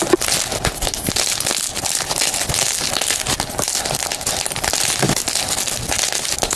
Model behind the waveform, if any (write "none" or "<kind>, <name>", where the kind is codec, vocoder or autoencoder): none